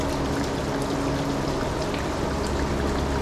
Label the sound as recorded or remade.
recorded